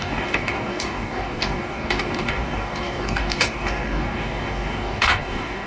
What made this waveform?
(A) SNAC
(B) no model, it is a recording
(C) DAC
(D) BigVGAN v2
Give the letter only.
C